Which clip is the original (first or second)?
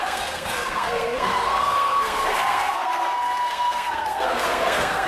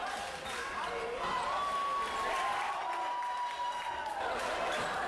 second